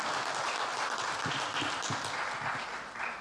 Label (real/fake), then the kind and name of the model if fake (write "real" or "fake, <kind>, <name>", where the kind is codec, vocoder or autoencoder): real